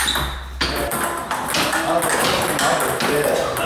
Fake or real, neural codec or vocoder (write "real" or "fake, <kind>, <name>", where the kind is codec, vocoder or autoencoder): real